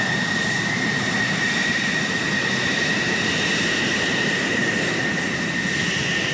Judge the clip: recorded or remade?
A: recorded